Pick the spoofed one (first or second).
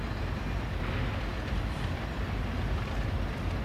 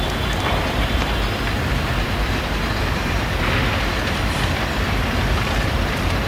second